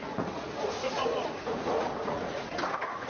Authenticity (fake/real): fake